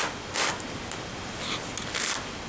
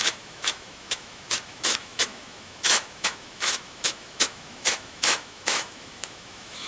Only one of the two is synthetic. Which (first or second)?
second